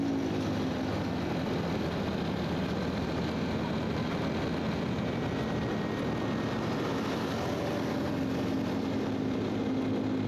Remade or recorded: recorded